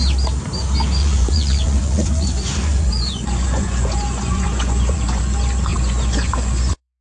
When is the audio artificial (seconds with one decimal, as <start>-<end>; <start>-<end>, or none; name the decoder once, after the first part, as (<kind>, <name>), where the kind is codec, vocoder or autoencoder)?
1.0-5.2 (vocoder, Vocos); 5.7-7.0